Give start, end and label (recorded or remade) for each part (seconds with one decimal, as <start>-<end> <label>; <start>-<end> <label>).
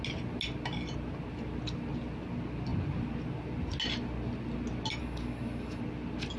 0.0-5.0 recorded; 5.0-5.8 remade; 5.8-6.4 recorded